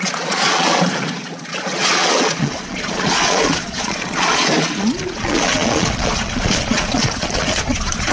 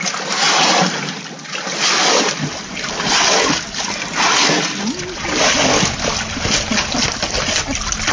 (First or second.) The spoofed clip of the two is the first